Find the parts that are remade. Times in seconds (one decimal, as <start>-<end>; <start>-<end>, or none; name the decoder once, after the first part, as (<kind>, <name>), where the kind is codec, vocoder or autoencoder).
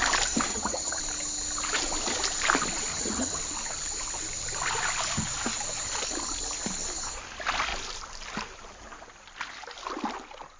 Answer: 0.5-1.0 (vocoder, HiFi-GAN); 2.9-3.4